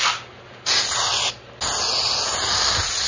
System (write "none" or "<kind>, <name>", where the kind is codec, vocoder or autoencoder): none